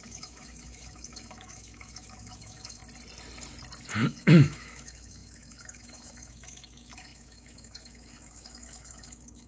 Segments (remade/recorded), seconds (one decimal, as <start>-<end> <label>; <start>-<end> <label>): 0.0-2.8 remade; 2.8-3.9 recorded; 3.9-9.5 remade